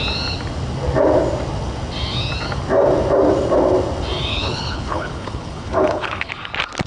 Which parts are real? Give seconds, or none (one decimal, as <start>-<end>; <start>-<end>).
0.0-4.3; 6.3-6.9